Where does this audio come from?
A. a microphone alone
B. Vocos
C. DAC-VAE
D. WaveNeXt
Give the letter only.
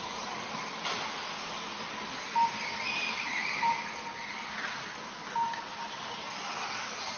A